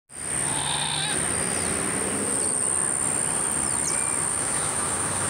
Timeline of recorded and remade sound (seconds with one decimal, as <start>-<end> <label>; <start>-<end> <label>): 0.0-4.3 recorded; 4.3-5.3 remade